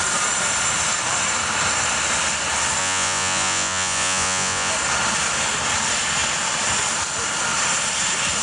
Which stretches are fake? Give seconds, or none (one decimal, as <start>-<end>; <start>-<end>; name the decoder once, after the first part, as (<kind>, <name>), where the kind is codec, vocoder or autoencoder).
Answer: 2.8-4.7 (vocoder, Vocos)